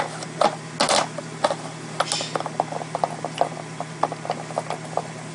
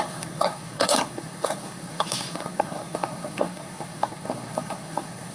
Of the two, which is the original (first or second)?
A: first